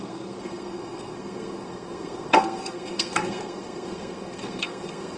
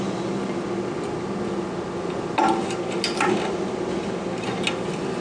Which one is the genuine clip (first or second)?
second